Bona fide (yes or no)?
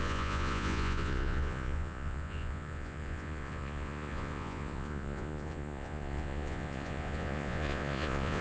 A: no